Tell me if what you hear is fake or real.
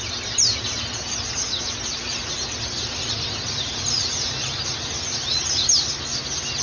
real